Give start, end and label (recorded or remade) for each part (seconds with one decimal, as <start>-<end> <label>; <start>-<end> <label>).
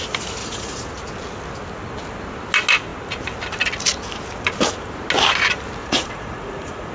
0.0-0.4 recorded; 0.4-0.9 remade; 0.9-5.8 recorded; 5.8-6.9 remade